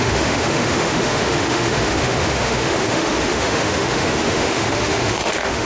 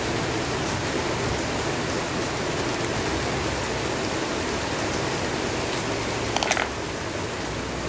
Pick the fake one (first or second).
first